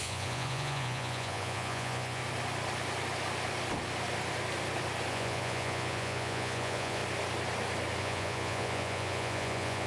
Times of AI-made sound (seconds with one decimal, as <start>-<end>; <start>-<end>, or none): 0.0-2.2; 5.1-7.0; 8.0-9.9